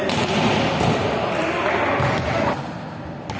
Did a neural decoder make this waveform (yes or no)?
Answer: no